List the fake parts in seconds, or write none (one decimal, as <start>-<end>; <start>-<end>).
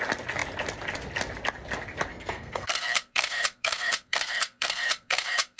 2.1-5.6